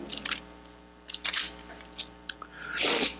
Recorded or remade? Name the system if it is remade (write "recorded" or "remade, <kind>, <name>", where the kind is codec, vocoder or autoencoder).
recorded